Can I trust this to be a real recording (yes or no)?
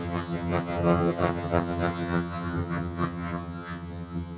no